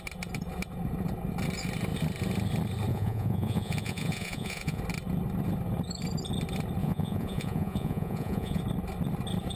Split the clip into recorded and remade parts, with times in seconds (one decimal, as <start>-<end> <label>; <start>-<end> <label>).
0.0-2.9 recorded; 2.9-4.8 remade; 4.8-6.8 recorded; 6.8-8.6 remade; 8.6-9.6 recorded